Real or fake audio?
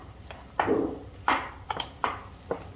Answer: fake